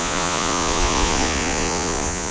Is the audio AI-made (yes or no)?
yes